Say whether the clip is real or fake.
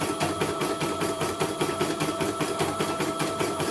fake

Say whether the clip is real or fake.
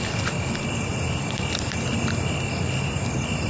real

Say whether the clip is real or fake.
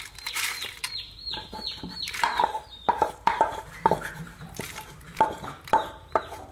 fake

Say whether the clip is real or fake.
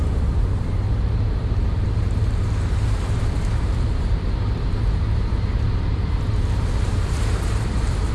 fake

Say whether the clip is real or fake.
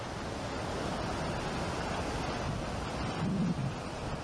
real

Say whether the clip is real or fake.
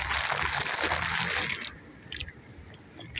real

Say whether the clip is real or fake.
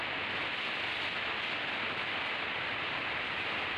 real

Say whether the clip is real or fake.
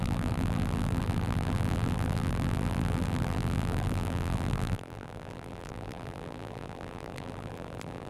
fake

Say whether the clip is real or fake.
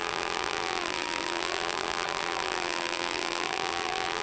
fake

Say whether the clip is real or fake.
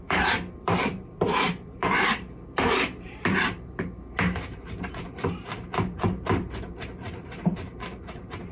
fake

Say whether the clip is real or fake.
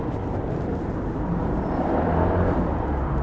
fake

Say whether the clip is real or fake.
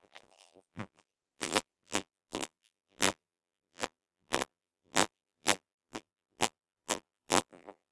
fake